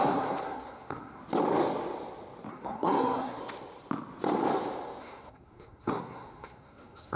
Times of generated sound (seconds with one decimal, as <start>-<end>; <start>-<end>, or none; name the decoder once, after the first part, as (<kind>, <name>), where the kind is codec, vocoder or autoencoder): 0.0-1.2 (codec, SNAC); 2.5-3.4; 5.0-7.2